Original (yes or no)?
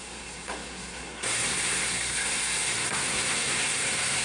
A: no